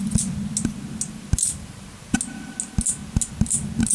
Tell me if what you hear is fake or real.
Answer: real